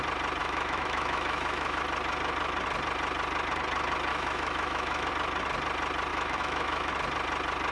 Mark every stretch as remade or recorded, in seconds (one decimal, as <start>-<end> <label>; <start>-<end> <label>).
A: 0.0-0.4 recorded; 0.4-1.8 remade; 1.8-4.1 recorded; 4.1-5.1 remade; 5.1-6.1 recorded; 6.1-6.9 remade; 6.9-7.7 recorded